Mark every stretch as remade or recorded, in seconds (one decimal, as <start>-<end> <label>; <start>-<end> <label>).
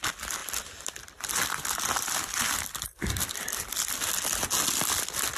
0.0-0.4 recorded; 0.4-3.6 remade; 3.6-5.4 recorded